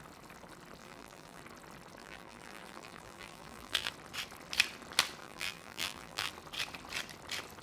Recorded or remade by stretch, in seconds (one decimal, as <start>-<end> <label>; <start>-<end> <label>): 0.0-0.8 recorded; 0.8-1.4 remade; 1.4-2.0 recorded; 2.0-3.9 remade; 3.9-5.2 recorded; 5.2-6.3 remade; 6.3-7.6 recorded